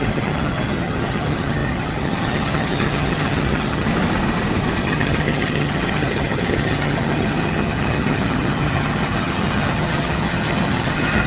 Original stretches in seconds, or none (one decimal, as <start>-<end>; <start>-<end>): 3.9-4.8